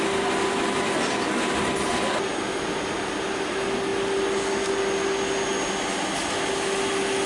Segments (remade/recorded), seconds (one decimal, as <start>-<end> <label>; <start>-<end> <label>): 0.0-7.3 recorded